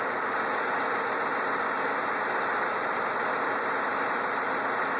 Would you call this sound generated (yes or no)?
no